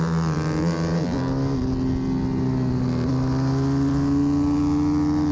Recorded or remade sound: recorded